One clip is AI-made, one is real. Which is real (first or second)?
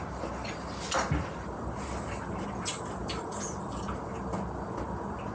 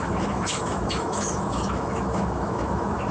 first